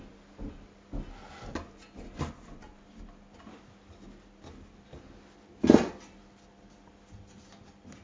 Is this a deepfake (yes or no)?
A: no